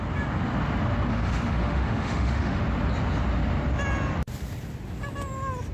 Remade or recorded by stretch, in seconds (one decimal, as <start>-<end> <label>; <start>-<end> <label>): 0.0-1.1 recorded; 1.1-2.6 remade; 2.6-5.7 recorded